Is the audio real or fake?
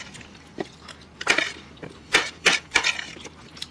fake